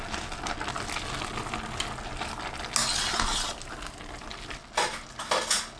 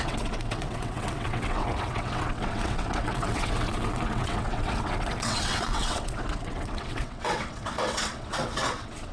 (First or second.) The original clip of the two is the first